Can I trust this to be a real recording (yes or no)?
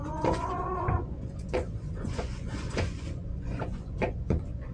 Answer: no